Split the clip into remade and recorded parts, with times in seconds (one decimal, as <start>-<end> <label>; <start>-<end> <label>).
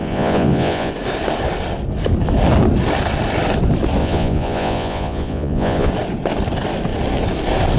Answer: 0.0-0.9 remade; 0.9-4.0 recorded; 4.0-5.9 remade; 5.9-7.8 recorded